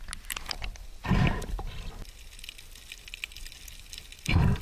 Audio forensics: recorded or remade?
recorded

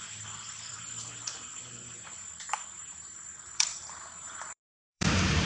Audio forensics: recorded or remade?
remade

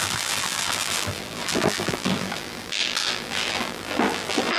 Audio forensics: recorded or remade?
remade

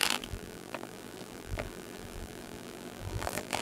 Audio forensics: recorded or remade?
remade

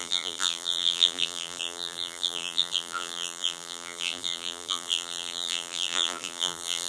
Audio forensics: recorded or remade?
remade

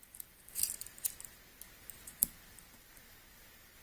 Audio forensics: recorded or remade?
recorded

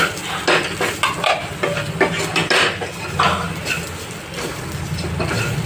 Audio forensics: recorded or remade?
recorded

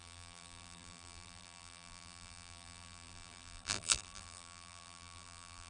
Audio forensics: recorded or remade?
remade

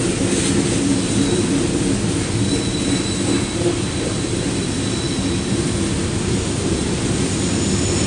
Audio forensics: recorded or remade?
recorded